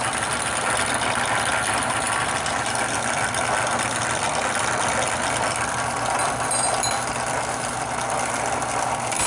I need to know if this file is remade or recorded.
recorded